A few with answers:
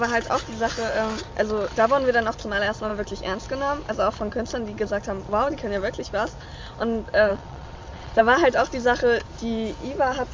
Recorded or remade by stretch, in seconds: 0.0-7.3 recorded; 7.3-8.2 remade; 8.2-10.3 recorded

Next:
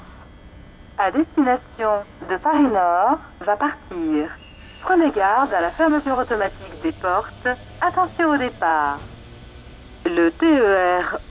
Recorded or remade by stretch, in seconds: 0.0-2.1 recorded; 2.1-2.7 remade; 2.7-4.8 recorded; 4.8-6.9 remade; 6.9-11.3 recorded

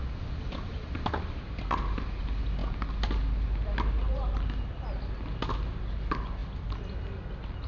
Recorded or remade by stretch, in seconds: 0.0-7.7 recorded

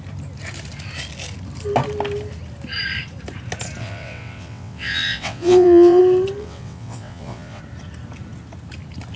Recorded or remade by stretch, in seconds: 0.0-3.8 recorded; 3.8-6.0 remade; 6.0-6.4 recorded; 6.4-7.6 remade; 7.6-9.2 recorded

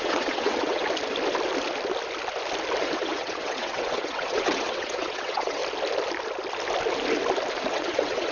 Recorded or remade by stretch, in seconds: 0.0-0.8 remade; 0.8-2.8 recorded; 2.8-5.6 remade; 5.6-7.7 recorded; 7.7-8.3 remade

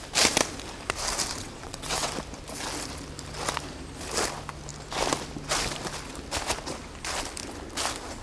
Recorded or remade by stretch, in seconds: 0.0-1.4 recorded; 1.4-2.1 remade; 2.1-8.2 recorded

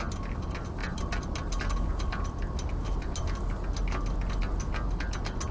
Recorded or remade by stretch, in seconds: 0.0-5.5 recorded